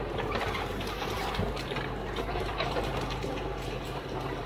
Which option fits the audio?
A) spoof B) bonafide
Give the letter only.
A